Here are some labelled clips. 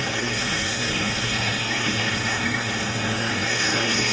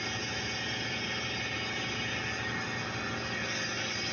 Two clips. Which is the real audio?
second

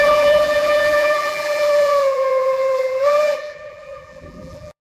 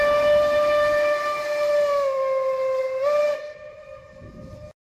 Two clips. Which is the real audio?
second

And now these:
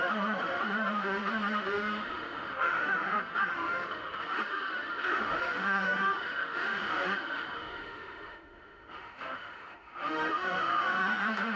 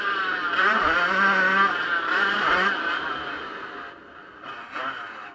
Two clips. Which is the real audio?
second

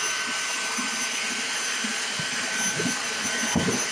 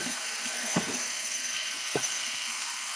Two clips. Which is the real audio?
first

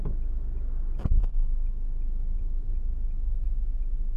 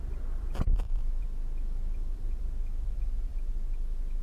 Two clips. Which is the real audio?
first